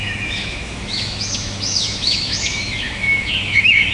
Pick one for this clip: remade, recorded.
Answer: remade